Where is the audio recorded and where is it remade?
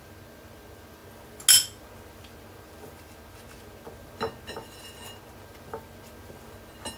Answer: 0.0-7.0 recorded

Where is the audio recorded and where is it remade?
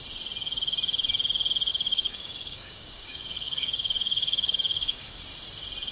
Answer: 0.0-1.7 recorded; 1.7-5.2 remade; 5.2-5.9 recorded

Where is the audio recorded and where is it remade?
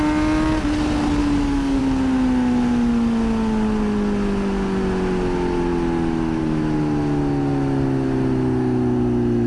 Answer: 0.0-1.2 recorded; 1.2-1.8 remade; 1.8-9.5 recorded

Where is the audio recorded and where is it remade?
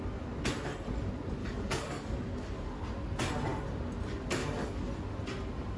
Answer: 0.0-1.4 recorded; 1.4-2.8 remade; 2.8-4.4 recorded; 4.4-4.9 remade; 4.9-5.8 recorded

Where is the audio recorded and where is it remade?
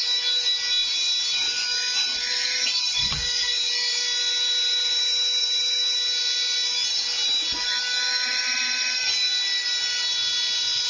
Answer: 0.0-3.0 recorded; 3.0-3.6 remade; 3.6-10.9 recorded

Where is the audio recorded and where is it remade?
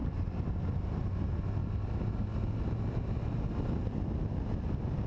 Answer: 0.0-5.1 recorded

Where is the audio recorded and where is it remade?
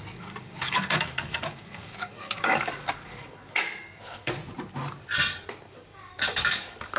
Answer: 0.0-4.4 remade; 4.4-5.7 recorded; 5.7-7.0 remade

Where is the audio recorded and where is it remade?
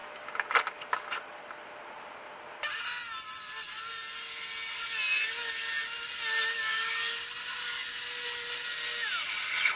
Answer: 0.0-9.8 recorded